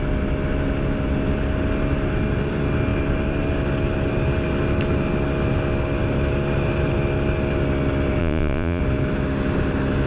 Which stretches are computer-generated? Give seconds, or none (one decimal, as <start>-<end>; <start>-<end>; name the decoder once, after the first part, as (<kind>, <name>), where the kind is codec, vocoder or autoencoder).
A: 8.2-8.8 (vocoder, Vocos)